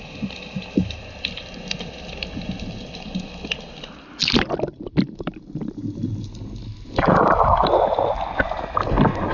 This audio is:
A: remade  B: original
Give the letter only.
B